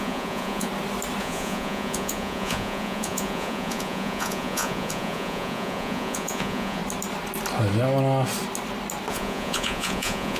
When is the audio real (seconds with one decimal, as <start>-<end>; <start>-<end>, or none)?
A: 0.7-1.2; 6.8-9.1